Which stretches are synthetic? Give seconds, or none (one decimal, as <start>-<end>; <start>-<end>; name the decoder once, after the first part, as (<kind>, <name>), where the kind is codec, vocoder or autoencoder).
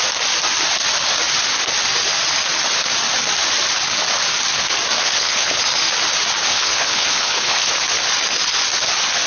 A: 5.0-5.6 (codec, HILCodec); 6.5-7.7